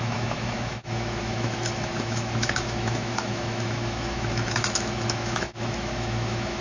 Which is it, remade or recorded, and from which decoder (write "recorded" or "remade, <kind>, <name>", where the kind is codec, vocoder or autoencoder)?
remade, autoencoder, DAC-VAE